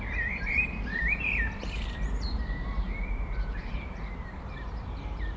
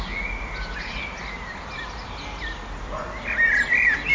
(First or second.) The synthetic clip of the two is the first